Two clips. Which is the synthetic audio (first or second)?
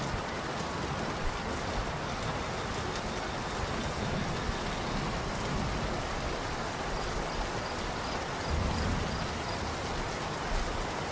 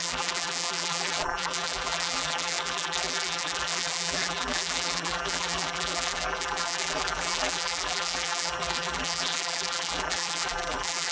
second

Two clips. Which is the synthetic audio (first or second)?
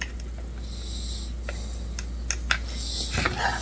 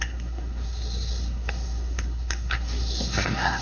second